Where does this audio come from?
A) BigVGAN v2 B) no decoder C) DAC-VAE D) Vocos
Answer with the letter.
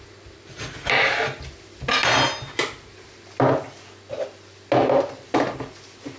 B